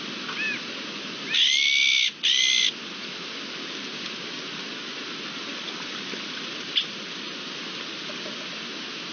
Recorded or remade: recorded